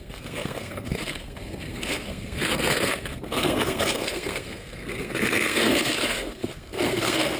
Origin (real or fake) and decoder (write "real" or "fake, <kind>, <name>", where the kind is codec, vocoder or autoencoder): fake, codec, SNAC